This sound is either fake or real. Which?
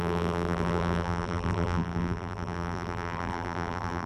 fake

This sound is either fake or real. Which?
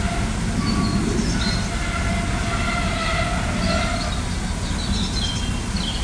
real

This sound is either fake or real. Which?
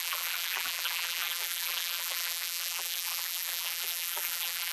fake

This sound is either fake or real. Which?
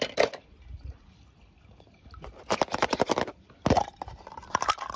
real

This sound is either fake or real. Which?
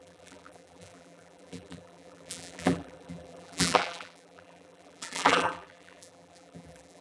fake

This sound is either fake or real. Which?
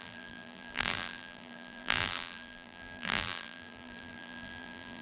fake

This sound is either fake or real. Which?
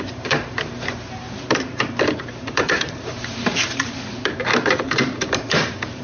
fake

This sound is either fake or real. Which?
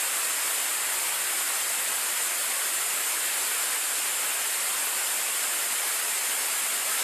real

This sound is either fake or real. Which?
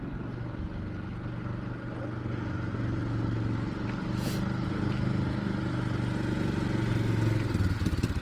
real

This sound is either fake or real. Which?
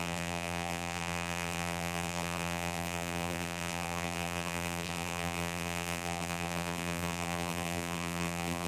fake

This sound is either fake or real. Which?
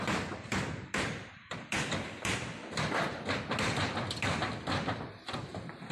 real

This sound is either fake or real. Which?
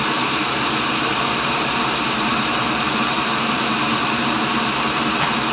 fake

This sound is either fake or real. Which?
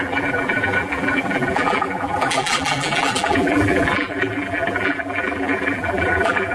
fake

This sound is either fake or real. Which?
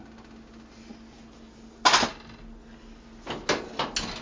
real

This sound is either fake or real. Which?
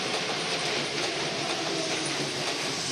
fake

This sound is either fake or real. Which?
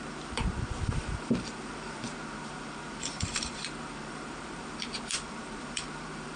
fake